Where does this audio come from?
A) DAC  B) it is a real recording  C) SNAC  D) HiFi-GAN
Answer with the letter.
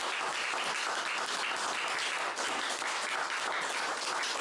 B